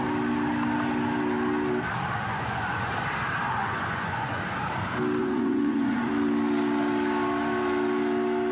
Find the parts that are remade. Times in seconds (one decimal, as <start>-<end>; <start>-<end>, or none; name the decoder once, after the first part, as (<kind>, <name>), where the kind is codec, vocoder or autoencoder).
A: 2.3-2.9 (vocoder, Vocos); 3.6-4.4; 5.2-6.1